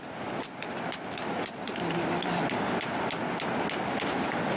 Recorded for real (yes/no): yes